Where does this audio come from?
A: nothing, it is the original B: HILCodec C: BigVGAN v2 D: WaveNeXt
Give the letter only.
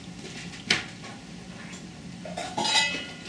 A